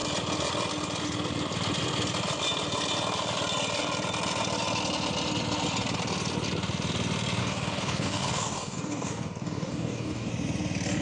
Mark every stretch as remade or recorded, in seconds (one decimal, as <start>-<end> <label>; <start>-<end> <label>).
0.0-7.4 recorded; 7.4-10.3 remade; 10.3-11.0 recorded